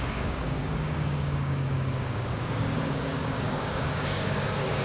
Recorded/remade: remade